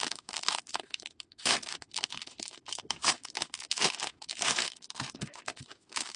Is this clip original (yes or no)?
no